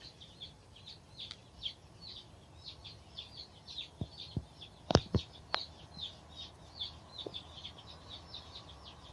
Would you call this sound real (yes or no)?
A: yes